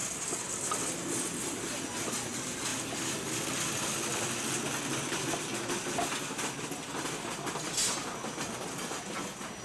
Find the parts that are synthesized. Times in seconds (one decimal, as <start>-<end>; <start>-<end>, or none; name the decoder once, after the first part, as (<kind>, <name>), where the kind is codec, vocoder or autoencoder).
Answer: none

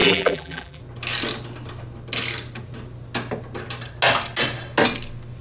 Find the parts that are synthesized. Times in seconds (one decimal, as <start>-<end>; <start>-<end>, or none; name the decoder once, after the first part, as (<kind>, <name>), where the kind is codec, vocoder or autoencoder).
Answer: 0.0-0.8 (vocoder, BigVGAN v2)

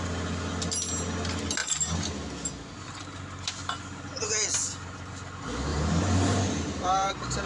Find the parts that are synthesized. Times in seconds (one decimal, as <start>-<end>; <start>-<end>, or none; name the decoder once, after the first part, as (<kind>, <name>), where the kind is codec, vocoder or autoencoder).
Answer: 5.7-7.1 (vocoder, BigVGAN v2)

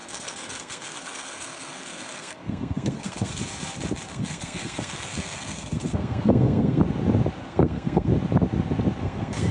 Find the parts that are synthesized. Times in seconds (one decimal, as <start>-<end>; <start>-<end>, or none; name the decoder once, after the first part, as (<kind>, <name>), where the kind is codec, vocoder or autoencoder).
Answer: 0.0-3.4 (codec, SNAC); 4.1-6.8; 7.4-8.1; 9.0-9.5